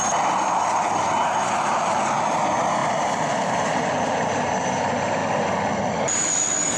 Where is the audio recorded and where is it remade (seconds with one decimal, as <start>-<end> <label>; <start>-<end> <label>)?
0.0-6.8 recorded